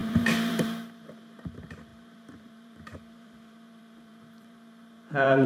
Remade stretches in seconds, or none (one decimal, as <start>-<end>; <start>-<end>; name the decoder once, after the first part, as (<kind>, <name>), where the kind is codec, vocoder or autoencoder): 0.0-5.5 (vocoder, BigVGAN v2)